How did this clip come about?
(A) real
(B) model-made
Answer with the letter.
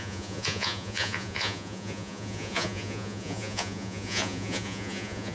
B